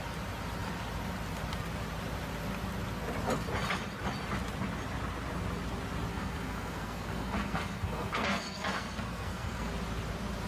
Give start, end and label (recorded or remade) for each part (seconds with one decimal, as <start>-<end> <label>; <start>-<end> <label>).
0.0-6.1 recorded; 6.1-9.7 remade; 9.7-10.5 recorded